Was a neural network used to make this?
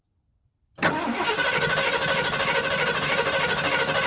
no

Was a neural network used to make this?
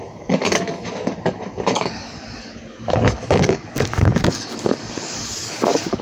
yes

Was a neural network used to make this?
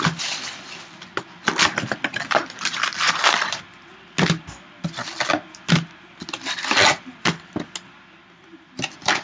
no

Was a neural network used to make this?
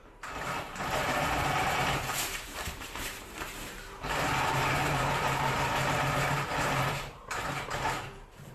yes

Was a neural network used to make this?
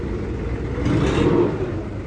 no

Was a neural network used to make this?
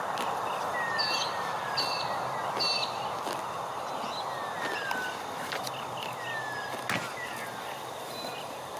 no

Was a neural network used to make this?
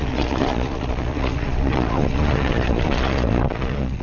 yes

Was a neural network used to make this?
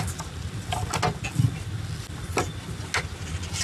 no